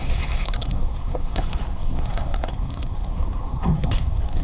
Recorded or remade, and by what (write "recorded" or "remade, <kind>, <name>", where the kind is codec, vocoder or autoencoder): remade, codec, SNAC